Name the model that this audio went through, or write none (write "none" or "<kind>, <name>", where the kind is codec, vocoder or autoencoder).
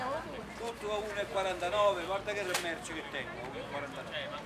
none